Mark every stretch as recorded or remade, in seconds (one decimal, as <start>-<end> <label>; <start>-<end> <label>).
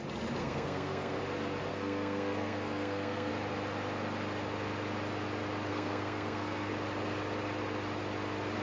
0.0-0.4 recorded; 0.4-1.2 remade; 1.2-1.7 recorded; 1.7-3.3 remade; 3.3-5.7 recorded; 5.7-6.7 remade; 6.7-8.6 recorded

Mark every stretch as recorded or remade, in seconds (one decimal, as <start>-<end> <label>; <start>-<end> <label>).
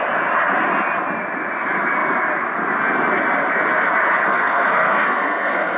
0.0-4.2 recorded; 4.2-5.8 remade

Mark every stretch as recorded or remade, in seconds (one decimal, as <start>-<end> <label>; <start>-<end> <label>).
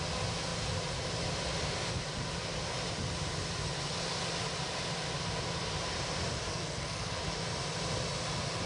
0.0-6.5 recorded; 6.5-7.2 remade; 7.2-8.7 recorded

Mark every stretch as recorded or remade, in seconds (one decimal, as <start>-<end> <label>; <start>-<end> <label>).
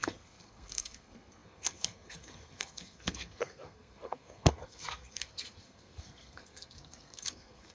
0.0-7.7 remade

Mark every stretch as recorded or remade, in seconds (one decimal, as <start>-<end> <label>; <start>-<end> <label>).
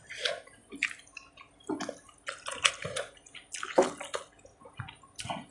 0.0-5.5 recorded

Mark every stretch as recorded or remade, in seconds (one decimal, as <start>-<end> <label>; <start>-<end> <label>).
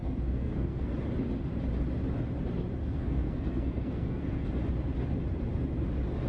0.0-0.9 remade; 0.9-2.8 recorded; 2.8-4.5 remade; 4.5-6.3 recorded